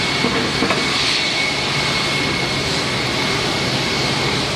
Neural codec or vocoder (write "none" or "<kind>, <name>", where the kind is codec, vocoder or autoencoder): none